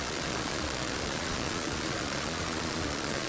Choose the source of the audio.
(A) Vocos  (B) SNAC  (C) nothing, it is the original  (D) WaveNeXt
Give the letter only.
A